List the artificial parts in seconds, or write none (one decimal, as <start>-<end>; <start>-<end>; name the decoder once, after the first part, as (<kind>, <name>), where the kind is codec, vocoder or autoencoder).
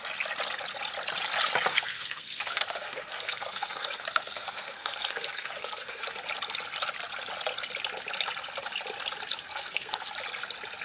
1.7-6.0 (codec, SNAC); 9.4-10.0